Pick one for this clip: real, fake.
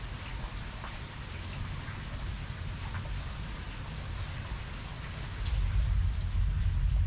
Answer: real